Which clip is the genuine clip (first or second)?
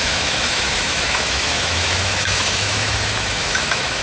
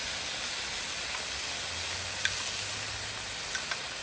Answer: second